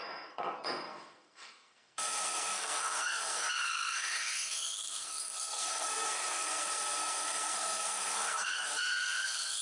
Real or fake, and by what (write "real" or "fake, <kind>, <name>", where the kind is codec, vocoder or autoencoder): fake, codec, SNAC